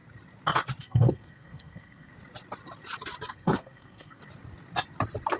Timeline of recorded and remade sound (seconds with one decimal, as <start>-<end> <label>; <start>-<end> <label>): 0.0-0.8 recorded; 0.8-2.1 remade; 2.1-3.3 recorded; 3.3-4.2 remade; 4.2-5.4 recorded